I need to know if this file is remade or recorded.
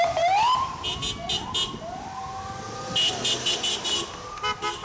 recorded